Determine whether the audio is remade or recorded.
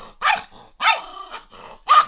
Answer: recorded